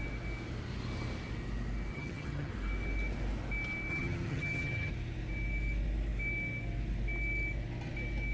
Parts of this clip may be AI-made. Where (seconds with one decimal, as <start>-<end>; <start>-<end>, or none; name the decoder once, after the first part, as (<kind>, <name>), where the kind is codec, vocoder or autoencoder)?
1.9-2.5 (vocoder, HiFi-GAN); 3.9-4.9